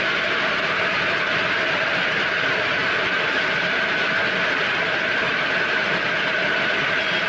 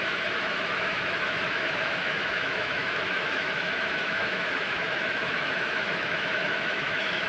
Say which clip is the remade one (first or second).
second